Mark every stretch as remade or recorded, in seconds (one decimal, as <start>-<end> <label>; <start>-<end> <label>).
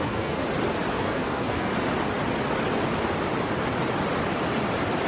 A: 0.0-0.4 remade; 0.4-0.9 recorded; 0.9-1.7 remade; 1.7-5.1 recorded